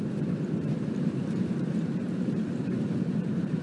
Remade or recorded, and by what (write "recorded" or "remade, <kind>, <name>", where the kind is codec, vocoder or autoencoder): remade, vocoder, BigVGAN v2